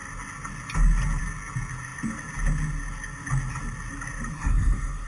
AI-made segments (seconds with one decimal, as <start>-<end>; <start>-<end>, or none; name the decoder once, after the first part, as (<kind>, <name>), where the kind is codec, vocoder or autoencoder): 4.3-5.1 (codec, SNAC)